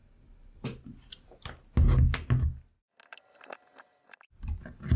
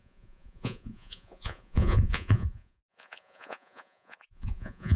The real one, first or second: first